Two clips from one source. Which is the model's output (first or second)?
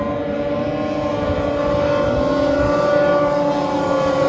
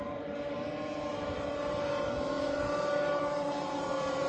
second